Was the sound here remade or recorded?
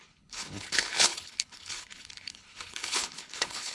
remade